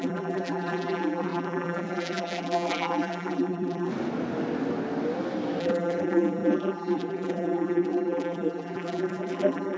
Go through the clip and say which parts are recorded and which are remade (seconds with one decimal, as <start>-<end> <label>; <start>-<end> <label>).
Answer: 0.0-3.9 remade; 3.9-5.6 recorded; 5.6-9.8 remade